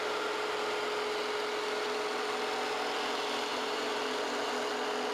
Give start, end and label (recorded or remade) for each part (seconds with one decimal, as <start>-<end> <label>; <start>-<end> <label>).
0.0-3.5 recorded; 3.5-4.5 remade; 4.5-5.1 recorded